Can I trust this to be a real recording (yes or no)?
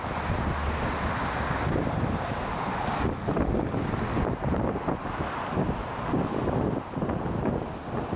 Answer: yes